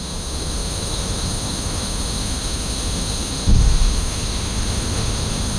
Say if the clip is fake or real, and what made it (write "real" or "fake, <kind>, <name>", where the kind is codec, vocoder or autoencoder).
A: fake, autoencoder, DAC-VAE